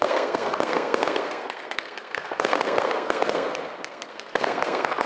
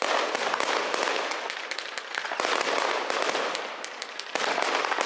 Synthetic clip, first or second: first